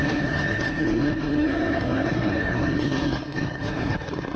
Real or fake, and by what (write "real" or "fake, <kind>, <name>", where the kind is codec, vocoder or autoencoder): fake, codec, SNAC